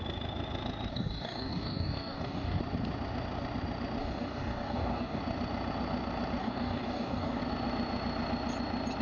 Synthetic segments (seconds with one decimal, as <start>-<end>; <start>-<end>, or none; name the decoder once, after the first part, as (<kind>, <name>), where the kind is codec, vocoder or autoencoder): 0.9-2.6 (codec, DAC); 4.0-5.2; 6.4-7.4